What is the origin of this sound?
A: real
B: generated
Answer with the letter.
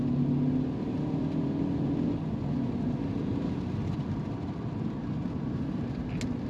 A